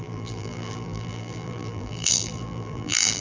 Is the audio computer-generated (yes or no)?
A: yes